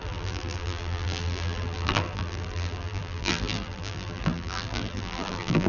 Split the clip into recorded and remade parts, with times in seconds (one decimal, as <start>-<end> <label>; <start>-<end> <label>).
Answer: 0.0-5.7 remade